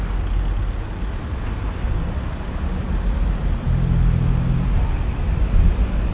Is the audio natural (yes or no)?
yes